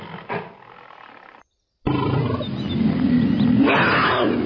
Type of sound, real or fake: real